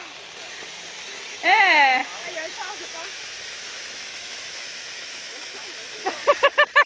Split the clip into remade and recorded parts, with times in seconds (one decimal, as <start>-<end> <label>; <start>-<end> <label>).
0.0-2.0 recorded; 2.0-6.1 remade; 6.1-6.9 recorded